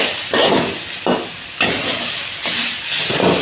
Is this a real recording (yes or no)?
yes